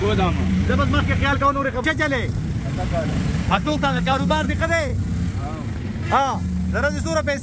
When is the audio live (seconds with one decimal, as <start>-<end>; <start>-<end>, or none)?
0.0-3.4; 4.5-7.4